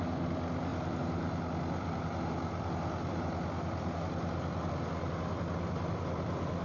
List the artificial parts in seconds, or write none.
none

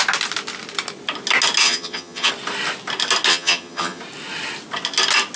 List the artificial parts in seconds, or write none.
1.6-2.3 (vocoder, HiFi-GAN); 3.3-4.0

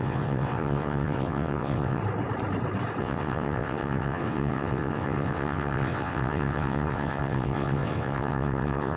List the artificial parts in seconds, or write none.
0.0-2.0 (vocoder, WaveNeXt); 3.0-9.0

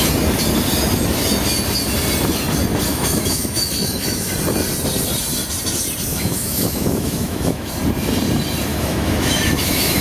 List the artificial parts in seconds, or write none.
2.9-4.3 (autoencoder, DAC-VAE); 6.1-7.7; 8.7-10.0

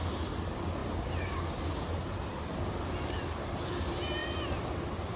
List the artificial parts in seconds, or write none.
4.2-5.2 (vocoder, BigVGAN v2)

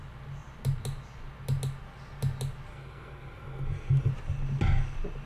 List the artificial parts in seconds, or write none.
2.7-4.1 (codec, SNAC)